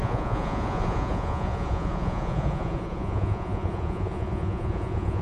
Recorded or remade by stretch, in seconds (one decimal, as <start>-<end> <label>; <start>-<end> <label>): 0.0-5.2 remade